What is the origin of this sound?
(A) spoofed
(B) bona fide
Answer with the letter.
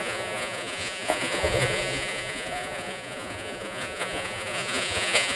A